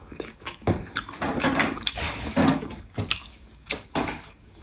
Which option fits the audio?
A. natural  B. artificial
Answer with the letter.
B